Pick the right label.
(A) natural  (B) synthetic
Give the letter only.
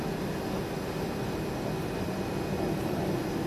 A